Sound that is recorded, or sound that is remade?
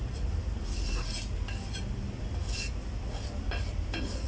recorded